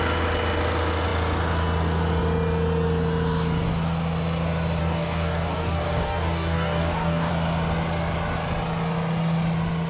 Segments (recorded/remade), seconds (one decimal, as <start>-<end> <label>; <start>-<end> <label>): 0.0-4.8 recorded; 4.8-7.3 remade; 7.3-9.9 recorded